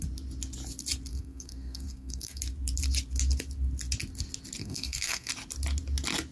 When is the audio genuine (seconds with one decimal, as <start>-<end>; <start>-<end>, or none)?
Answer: 0.0-1.1; 2.4-4.6; 5.3-6.3